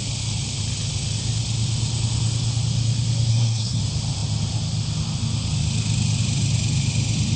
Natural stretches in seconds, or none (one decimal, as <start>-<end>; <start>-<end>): 0.0-3.3; 3.8-7.4

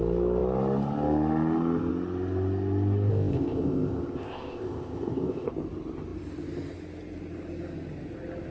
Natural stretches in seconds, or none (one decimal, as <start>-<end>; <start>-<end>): 0.0-3.1; 5.5-8.5

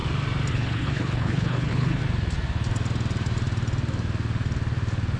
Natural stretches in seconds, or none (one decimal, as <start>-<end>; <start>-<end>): 0.0-0.5; 2.0-5.2

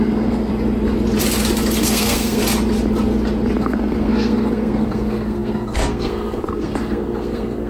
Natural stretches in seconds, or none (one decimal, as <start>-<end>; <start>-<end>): 0.5-1.8; 2.4-3.6

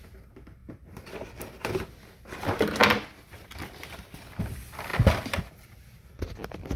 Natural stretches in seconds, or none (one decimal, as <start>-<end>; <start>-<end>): 0.0-6.8

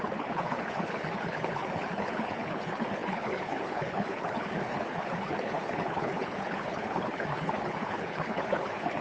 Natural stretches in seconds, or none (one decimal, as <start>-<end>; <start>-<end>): none

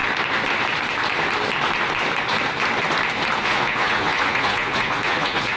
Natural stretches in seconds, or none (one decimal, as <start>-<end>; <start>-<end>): 0.0-3.4

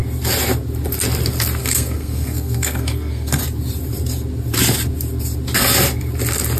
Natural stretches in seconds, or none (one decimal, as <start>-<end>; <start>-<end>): 0.0-1.6; 3.4-6.6